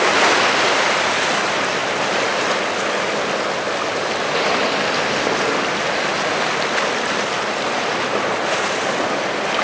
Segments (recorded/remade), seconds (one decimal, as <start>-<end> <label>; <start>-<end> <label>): 0.0-9.6 recorded